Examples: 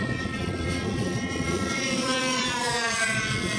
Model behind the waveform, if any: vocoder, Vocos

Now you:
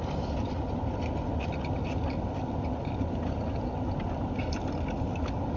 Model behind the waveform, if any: none